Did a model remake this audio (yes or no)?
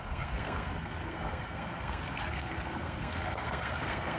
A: yes